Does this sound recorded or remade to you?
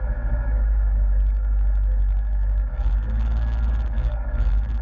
remade